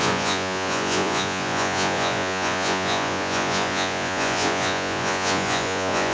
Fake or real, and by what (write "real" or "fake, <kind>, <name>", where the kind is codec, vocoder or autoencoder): fake, vocoder, Vocos